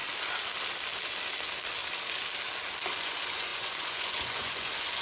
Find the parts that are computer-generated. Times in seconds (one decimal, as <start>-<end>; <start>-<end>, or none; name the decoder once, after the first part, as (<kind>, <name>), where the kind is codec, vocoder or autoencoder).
3.0-5.0 (vocoder, Vocos)